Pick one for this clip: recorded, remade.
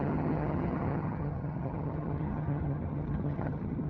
remade